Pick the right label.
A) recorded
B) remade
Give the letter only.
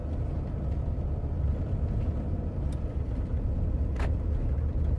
A